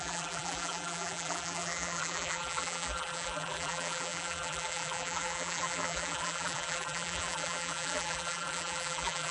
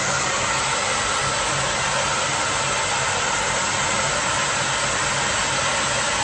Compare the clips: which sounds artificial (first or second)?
first